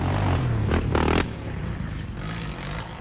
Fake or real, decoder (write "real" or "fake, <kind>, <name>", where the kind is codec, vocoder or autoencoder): real